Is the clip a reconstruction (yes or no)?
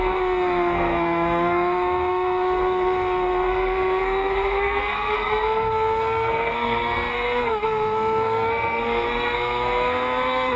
yes